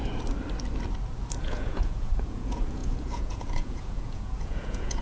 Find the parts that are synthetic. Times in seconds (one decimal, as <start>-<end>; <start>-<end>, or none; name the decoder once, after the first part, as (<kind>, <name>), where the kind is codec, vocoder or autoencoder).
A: 1.4-5.0 (vocoder, Vocos)